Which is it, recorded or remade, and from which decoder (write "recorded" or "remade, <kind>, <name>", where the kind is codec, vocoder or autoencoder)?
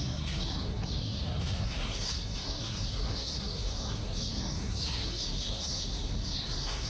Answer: remade, codec, SNAC